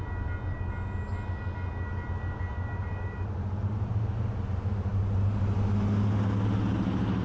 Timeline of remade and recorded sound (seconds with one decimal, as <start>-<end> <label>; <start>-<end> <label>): 0.0-2.5 recorded; 2.5-3.9 remade; 3.9-4.9 recorded; 4.9-5.4 remade; 5.4-7.2 recorded